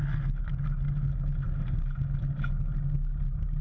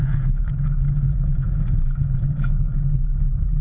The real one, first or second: first